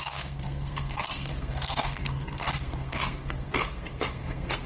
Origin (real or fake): fake